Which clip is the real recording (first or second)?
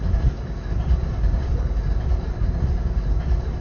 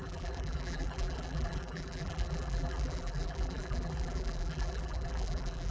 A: first